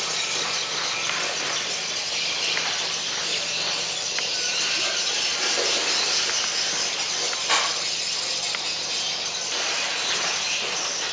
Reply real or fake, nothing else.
real